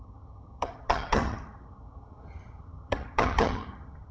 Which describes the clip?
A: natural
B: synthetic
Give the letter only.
B